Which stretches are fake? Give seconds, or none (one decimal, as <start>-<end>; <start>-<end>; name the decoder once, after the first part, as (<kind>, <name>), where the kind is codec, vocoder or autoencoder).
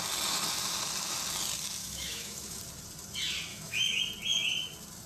1.8-2.6 (autoencoder, DAC-VAE); 3.5-4.0